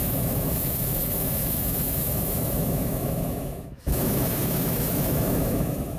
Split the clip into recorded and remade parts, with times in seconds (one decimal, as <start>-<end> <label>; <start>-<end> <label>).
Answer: 0.0-6.0 remade